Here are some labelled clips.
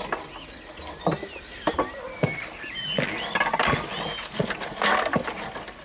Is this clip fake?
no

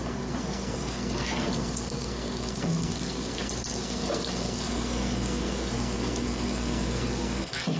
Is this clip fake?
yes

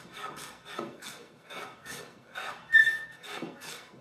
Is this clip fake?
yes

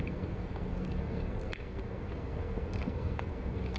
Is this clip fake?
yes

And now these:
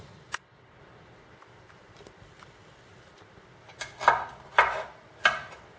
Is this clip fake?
no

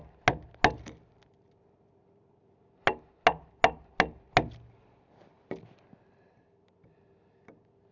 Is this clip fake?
no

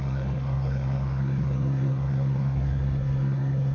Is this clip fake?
yes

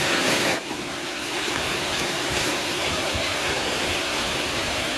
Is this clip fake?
yes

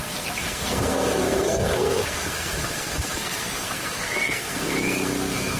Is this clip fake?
yes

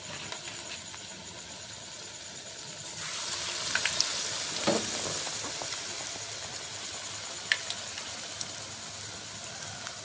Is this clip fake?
no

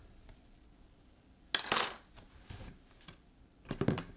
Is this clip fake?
no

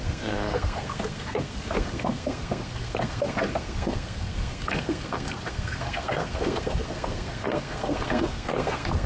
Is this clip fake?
yes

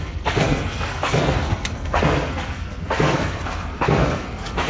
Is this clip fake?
yes